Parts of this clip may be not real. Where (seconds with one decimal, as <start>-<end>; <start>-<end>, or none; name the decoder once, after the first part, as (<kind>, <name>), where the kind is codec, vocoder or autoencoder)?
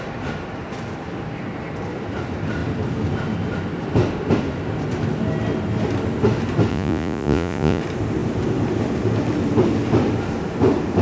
6.7-7.8 (vocoder, Vocos)